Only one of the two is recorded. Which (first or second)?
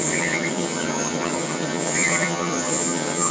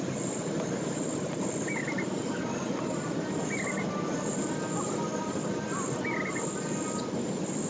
second